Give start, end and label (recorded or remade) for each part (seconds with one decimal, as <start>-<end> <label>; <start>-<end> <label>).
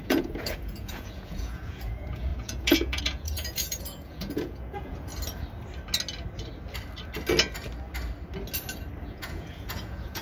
0.0-5.1 remade; 5.1-9.0 recorded; 9.0-10.2 remade